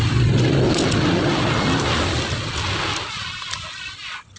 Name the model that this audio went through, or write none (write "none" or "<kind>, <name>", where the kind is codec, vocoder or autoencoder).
none